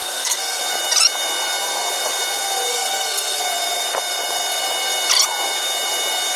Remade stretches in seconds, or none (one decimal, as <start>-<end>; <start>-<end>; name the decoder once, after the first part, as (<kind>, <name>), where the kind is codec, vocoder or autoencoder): 0.0-0.6 (codec, SNAC); 2.7-3.4